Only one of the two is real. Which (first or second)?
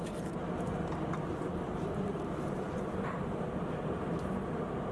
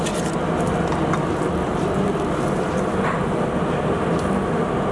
second